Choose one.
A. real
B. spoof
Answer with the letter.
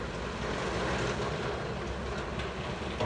A